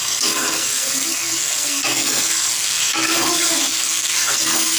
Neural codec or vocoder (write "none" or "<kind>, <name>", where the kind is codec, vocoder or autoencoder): codec, SNAC